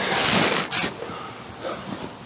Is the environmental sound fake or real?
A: real